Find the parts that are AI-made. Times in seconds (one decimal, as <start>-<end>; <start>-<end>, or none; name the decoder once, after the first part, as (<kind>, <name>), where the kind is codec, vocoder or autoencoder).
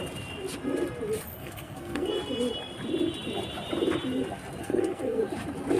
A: 1.4-2.1 (codec, SNAC); 4.6-5.2